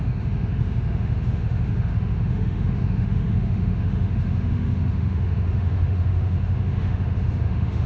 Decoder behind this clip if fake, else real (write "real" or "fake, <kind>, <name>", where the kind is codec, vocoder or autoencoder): fake, autoencoder, DAC-VAE